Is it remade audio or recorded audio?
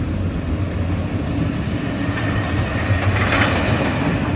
recorded